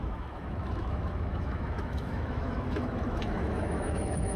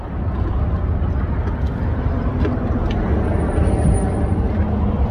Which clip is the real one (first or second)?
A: second